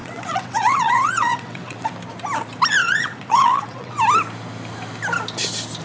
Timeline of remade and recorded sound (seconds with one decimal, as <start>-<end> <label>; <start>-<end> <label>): 0.0-1.9 remade; 1.9-2.8 recorded; 2.8-4.0 remade; 4.0-5.8 recorded